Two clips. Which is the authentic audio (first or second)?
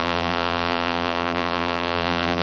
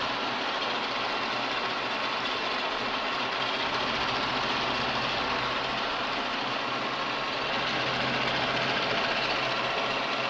second